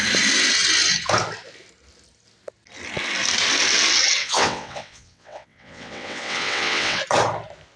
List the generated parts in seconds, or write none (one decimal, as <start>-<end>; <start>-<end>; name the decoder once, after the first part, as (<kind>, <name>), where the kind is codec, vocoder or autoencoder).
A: 4.2-7.0 (vocoder, WaveNeXt)